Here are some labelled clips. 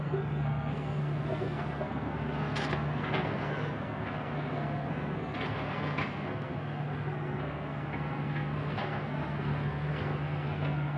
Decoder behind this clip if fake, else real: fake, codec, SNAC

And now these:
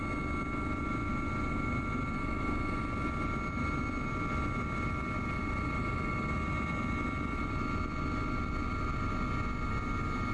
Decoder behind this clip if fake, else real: real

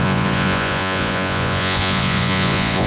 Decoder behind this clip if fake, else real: fake, vocoder, Vocos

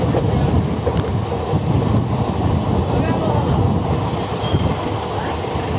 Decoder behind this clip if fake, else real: real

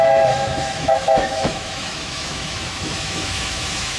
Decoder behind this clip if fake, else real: fake, autoencoder, DAC-VAE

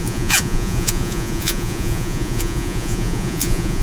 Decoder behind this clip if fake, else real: fake, vocoder, Vocos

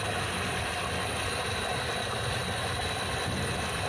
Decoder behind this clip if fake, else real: real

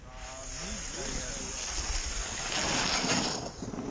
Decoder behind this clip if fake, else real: real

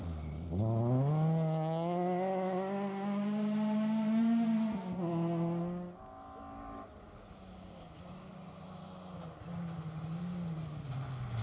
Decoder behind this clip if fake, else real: real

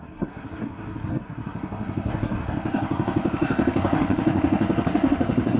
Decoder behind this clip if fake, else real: fake, codec, SNAC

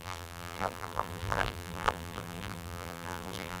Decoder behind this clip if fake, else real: fake, vocoder, BigVGAN v2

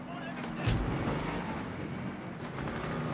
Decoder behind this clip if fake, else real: real